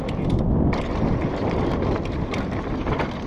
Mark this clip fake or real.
real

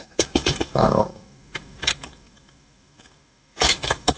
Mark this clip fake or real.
fake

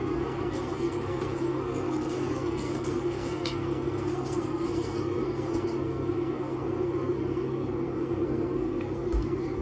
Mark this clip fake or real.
fake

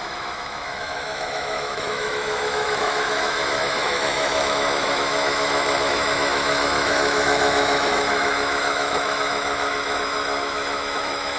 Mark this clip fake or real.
fake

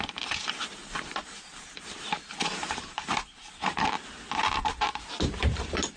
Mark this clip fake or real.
fake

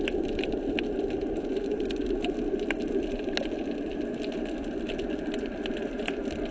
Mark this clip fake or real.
real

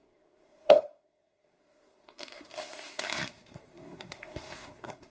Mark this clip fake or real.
fake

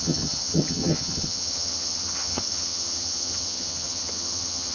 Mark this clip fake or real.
fake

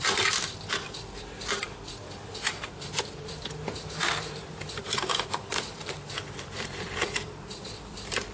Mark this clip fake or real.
fake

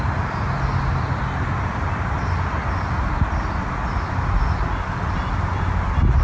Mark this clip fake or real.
real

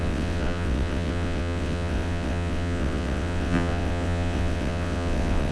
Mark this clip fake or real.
fake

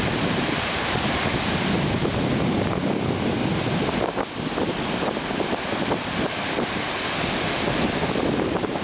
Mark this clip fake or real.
real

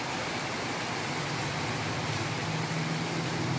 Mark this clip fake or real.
real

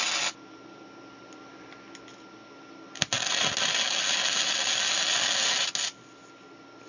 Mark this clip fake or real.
real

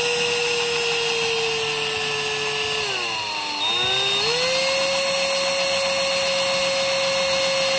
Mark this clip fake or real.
real